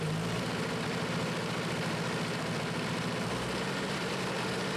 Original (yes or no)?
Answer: no